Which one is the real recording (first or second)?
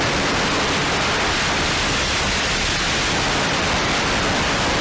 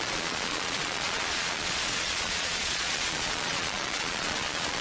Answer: first